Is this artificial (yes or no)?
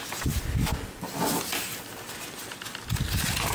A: no